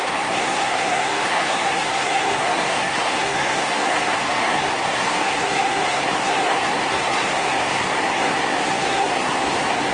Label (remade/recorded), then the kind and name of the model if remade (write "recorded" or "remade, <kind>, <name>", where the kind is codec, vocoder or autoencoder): remade, codec, SNAC